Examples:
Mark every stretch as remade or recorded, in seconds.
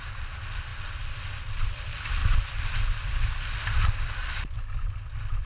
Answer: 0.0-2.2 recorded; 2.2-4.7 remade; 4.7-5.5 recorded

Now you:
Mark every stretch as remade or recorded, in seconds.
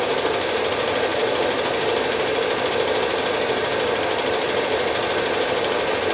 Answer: 0.0-6.1 recorded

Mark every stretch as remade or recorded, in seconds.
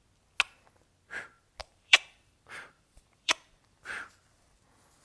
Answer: 0.0-1.6 recorded; 1.6-4.6 remade; 4.6-5.0 recorded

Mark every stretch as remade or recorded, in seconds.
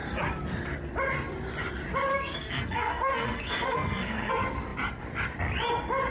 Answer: 0.0-2.1 recorded; 2.1-4.3 remade; 4.3-6.1 recorded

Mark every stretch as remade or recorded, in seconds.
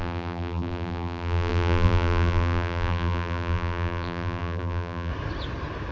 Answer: 0.0-5.1 remade; 5.1-5.9 recorded